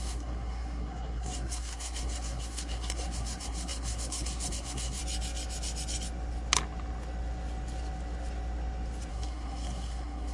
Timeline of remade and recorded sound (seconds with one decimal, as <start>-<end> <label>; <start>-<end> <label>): 0.0-5.0 remade; 5.0-9.1 recorded; 9.1-10.3 remade